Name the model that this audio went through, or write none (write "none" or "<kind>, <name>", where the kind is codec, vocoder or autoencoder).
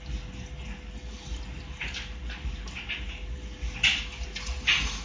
none